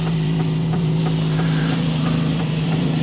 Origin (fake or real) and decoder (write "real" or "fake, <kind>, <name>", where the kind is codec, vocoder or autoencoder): fake, vocoder, BigVGAN v2